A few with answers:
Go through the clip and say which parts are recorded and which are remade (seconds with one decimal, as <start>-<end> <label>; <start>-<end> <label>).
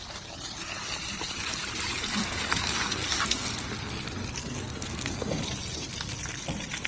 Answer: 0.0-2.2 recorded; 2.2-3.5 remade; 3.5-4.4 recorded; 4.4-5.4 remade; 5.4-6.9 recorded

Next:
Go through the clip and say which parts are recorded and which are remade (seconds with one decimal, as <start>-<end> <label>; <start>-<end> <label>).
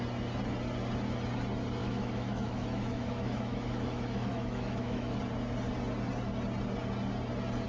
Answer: 0.0-1.8 recorded; 1.8-5.2 remade; 5.2-7.7 recorded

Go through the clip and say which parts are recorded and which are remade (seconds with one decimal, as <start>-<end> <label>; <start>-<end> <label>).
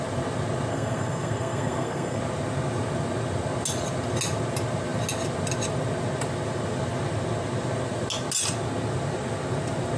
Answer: 0.0-0.7 recorded; 0.7-2.2 remade; 2.2-10.0 recorded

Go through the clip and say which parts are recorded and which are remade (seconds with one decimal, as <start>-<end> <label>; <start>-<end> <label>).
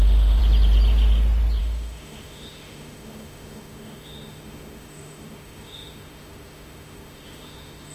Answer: 0.0-0.4 remade; 0.4-1.6 recorded; 1.6-7.9 remade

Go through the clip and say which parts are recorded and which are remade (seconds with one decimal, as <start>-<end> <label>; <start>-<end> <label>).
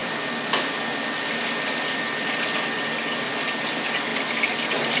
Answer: 0.0-5.0 recorded